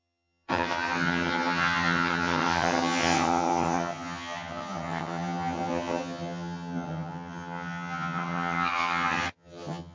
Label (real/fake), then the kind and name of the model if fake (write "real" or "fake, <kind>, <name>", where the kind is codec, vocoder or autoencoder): fake, vocoder, HiFi-GAN